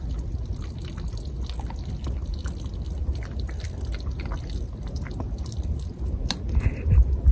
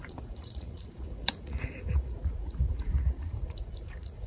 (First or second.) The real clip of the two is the first